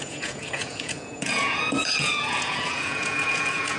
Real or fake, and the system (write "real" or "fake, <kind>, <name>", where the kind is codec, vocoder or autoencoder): fake, vocoder, Vocos